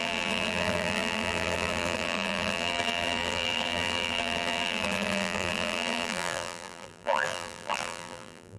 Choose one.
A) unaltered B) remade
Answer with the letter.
B